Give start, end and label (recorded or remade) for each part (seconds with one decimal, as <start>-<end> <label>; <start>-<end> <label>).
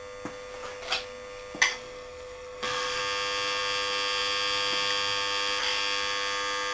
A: 0.0-1.7 recorded; 1.7-3.0 remade; 3.0-6.7 recorded